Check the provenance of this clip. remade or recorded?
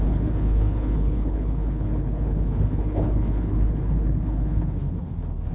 remade